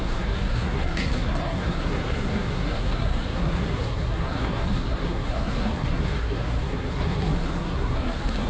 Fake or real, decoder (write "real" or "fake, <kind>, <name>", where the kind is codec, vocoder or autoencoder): fake, codec, SNAC